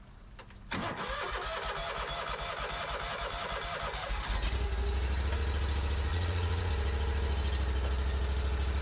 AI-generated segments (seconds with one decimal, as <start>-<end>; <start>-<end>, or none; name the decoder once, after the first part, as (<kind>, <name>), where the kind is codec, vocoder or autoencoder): 6.1-6.7 (vocoder, Vocos)